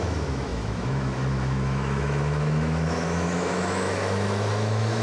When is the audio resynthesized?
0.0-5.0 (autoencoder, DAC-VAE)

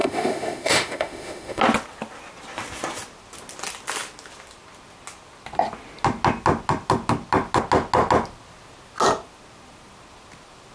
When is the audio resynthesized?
0.0-1.6 (autoencoder, DAC-VAE)